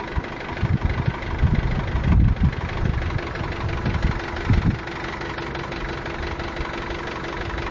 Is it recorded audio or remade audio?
recorded